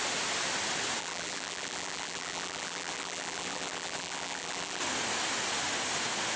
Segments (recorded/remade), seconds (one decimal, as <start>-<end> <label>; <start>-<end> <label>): 0.0-1.0 recorded; 1.0-4.8 remade; 4.8-6.4 recorded